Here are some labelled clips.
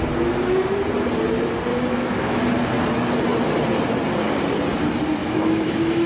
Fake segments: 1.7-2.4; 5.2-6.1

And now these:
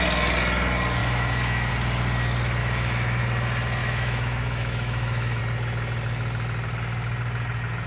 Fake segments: 1.0-1.7; 2.6-3.2; 3.8-5.4

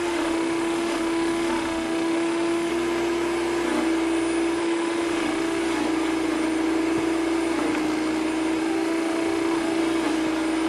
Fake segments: 0.0-2.7; 4.6-5.6; 8.6-9.8

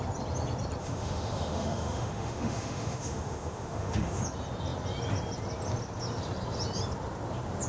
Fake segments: 0.8-4.2

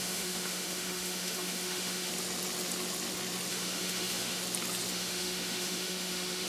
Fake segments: 0.0-2.1; 3.5-4.4; 4.9-6.5

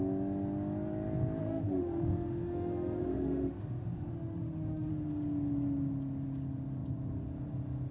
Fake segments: 1.4-4.9

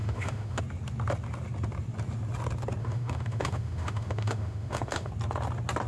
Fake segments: 0.0-0.6; 2.8-5.1